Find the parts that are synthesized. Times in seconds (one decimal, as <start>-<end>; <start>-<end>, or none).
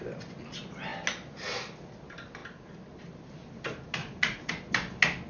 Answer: 4.0-4.5